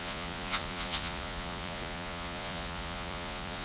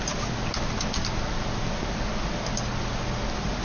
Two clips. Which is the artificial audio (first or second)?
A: first